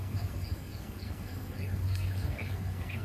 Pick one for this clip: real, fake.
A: fake